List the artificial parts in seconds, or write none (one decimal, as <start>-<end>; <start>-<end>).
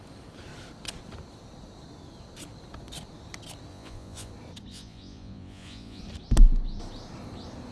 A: 3.7-4.3; 4.7-6.0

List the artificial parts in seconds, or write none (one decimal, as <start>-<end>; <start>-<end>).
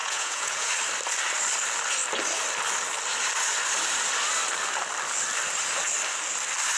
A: 0.0-0.7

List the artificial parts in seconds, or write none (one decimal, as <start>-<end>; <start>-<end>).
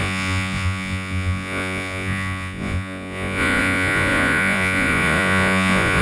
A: 0.0-6.0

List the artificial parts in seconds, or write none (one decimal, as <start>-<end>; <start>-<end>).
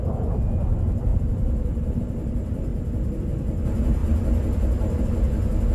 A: 1.1-2.0; 2.7-3.2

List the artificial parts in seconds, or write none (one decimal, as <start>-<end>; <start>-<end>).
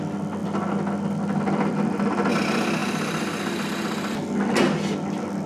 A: none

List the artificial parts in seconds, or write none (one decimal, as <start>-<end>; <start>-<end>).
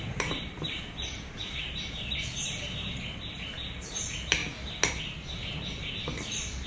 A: 0.0-4.4; 4.9-6.7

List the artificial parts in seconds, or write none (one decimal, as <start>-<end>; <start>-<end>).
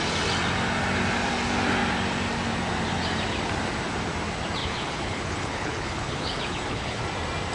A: 4.6-7.0